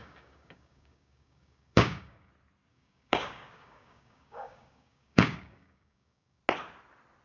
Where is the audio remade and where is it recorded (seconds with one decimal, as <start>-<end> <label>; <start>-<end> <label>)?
0.0-2.3 remade; 2.3-2.7 recorded; 2.7-6.4 remade; 6.4-7.2 recorded